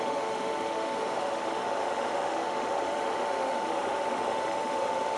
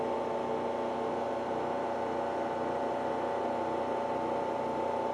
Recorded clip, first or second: second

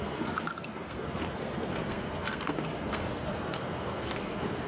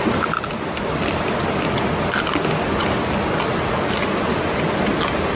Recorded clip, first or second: second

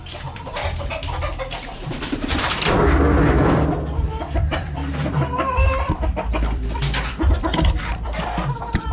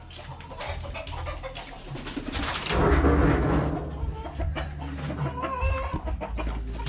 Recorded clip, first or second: second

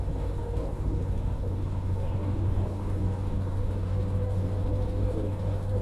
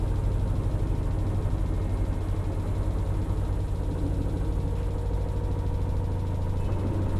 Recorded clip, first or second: second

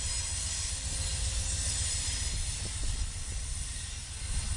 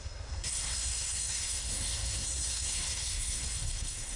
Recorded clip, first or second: first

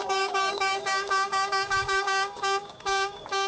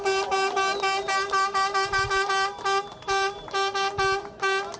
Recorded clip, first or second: second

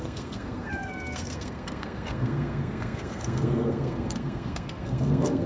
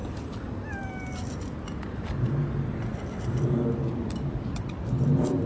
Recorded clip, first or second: second